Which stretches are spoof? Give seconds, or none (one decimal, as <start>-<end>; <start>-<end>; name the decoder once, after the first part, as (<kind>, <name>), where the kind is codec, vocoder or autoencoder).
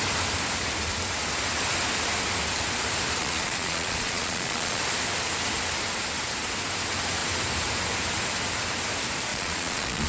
3.2-4.8 (vocoder, Vocos); 9.3-10.1